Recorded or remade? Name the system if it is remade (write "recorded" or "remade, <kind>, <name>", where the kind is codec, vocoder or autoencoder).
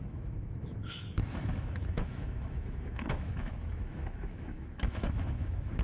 remade, autoencoder, DAC-VAE